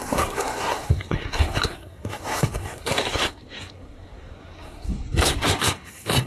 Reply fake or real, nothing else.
fake